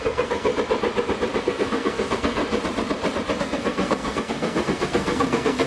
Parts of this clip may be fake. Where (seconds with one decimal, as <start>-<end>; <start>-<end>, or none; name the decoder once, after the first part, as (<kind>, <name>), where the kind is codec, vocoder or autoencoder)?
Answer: 0.0-0.5 (codec, SNAC); 1.4-2.4; 3.4-5.7